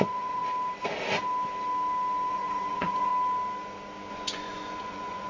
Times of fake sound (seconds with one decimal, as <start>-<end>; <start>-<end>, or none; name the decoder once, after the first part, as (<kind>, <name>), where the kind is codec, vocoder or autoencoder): 0.0-0.4 (vocoder, Vocos); 2.3-3.1; 4.1-5.3